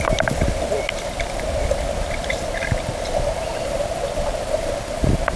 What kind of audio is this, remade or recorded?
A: recorded